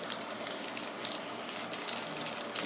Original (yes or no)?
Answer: yes